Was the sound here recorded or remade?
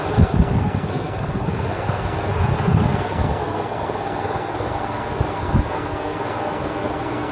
remade